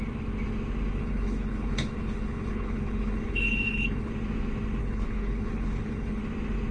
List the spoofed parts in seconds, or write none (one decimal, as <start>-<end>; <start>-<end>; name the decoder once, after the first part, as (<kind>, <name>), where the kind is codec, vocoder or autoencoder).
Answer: 1.0-4.1 (codec, HILCodec); 4.8-6.2